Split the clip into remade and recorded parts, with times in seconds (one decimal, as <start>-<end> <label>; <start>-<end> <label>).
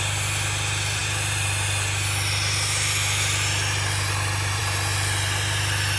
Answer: 0.0-6.0 recorded